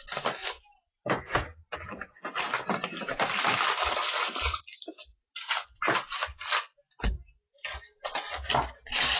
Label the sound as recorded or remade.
recorded